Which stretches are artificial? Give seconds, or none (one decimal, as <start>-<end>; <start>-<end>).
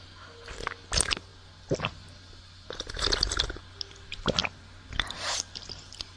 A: none